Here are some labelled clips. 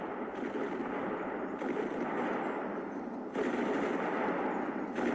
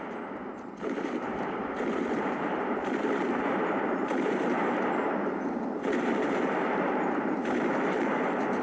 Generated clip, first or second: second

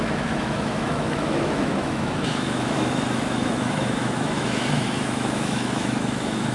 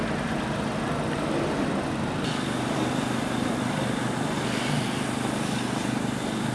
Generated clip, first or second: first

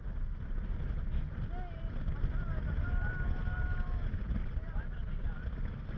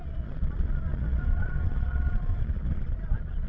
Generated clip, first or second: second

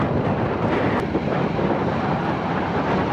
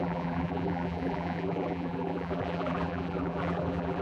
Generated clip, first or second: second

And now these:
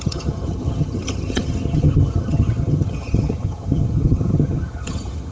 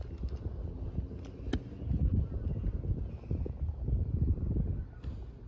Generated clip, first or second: first